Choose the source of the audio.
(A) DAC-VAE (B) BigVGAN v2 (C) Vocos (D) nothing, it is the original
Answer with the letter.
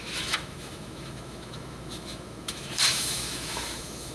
A